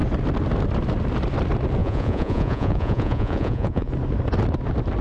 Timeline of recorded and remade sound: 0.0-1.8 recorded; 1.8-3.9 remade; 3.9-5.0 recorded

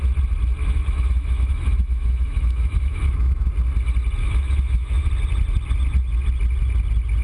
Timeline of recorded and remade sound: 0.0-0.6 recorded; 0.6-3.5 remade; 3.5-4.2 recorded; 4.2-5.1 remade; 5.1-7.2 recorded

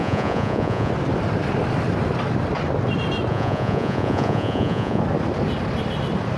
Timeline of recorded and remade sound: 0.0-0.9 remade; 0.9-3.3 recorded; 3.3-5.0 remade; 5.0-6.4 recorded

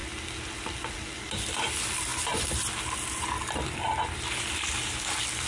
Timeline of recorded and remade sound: 0.0-5.5 recorded

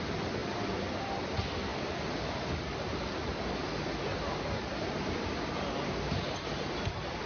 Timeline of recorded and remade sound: 0.0-7.3 recorded

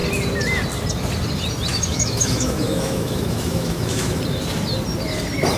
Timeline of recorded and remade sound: 0.0-1.7 recorded; 1.7-4.2 remade; 4.2-5.6 recorded

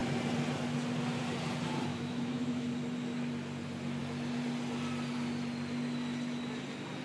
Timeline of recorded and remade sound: 0.0-1.9 recorded; 1.9-2.7 remade; 2.7-7.0 recorded

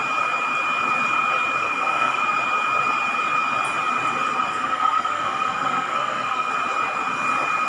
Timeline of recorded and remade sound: 0.0-1.6 recorded; 1.6-2.2 remade; 2.2-4.5 recorded; 4.5-6.5 remade; 6.5-7.7 recorded